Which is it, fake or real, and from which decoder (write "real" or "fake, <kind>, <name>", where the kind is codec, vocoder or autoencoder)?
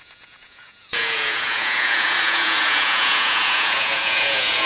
fake, vocoder, Vocos